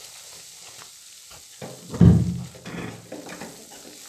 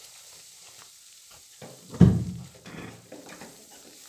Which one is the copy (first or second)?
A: second